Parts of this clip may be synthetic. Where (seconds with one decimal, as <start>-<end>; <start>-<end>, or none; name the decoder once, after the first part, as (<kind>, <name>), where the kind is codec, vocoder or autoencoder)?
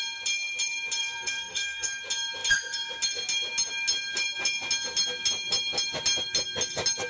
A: 1.0-2.0 (codec, SNAC)